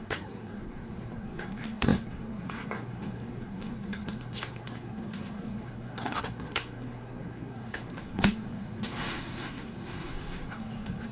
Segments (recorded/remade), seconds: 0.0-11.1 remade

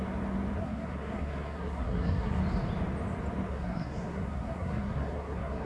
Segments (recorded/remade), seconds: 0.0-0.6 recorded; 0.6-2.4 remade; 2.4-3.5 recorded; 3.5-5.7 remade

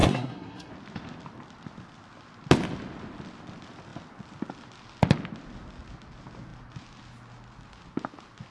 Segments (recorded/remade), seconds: 0.0-0.7 remade; 0.7-8.5 recorded

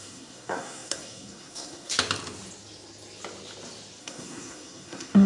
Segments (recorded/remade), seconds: 0.0-1.9 remade; 1.9-4.0 recorded; 4.0-5.3 remade

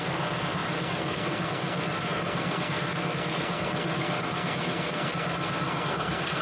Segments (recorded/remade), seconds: 0.0-6.4 remade